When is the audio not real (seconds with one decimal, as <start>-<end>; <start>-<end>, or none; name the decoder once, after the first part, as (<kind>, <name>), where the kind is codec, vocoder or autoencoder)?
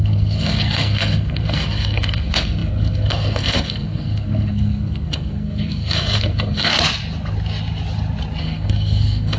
0.0-6.7 (codec, SNAC); 8.4-9.4